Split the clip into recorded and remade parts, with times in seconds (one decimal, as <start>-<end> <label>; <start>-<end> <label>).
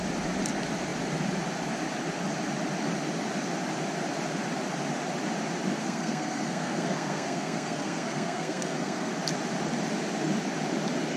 0.0-5.8 recorded; 5.8-9.1 remade; 9.1-11.2 recorded